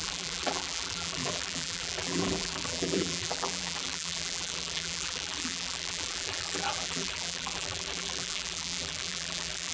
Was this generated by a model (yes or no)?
yes